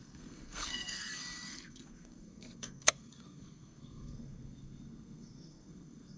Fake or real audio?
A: fake